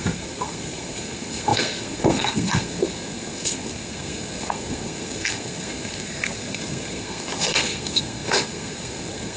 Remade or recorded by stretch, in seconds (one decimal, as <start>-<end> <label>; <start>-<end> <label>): 0.0-9.4 remade